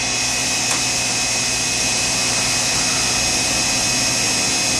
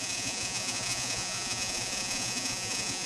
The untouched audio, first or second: first